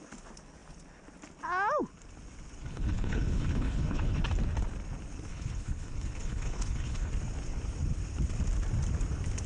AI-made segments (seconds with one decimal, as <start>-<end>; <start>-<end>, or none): 2.6-4.2; 5.3-7.1